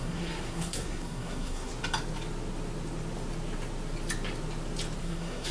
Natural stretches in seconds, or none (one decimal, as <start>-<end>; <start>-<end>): 1.7-5.0